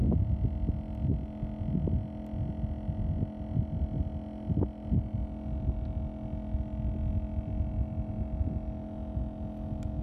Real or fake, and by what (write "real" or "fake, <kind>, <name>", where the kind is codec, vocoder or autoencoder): real